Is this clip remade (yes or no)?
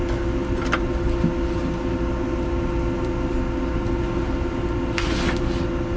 no